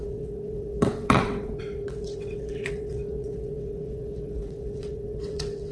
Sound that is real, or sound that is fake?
fake